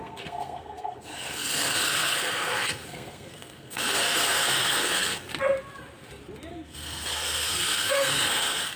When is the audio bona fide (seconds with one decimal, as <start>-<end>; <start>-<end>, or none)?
5.3-6.5